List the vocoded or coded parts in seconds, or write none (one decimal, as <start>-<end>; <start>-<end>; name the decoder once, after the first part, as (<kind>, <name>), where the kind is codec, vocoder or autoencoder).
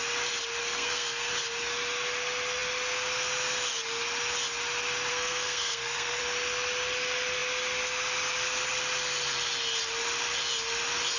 0.6-1.3 (codec, SNAC); 5.1-6.2